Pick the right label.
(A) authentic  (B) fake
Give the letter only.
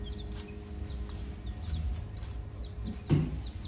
A